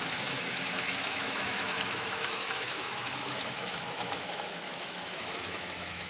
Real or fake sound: fake